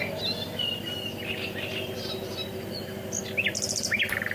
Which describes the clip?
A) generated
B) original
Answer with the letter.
A